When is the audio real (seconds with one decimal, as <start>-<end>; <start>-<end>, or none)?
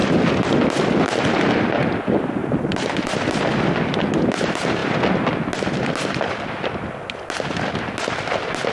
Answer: 0.0-8.7